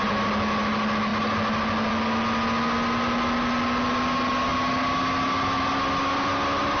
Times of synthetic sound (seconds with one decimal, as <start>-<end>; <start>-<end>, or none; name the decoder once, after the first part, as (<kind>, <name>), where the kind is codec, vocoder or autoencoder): none